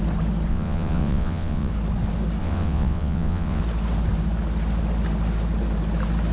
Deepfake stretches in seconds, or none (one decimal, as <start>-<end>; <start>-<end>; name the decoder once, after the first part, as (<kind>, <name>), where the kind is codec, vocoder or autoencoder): 0.5-1.7 (vocoder, WaveNeXt); 2.4-3.6